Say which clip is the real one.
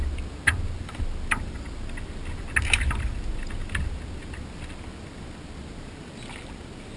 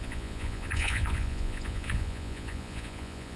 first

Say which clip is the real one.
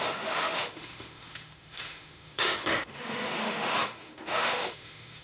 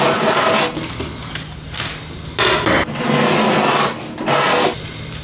second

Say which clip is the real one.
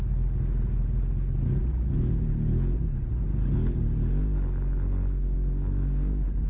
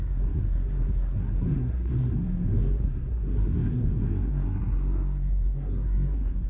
first